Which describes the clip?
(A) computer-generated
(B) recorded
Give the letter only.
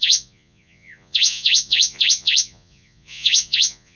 A